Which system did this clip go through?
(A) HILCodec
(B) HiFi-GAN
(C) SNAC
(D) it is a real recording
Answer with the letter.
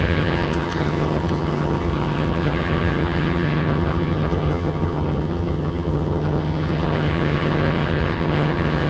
B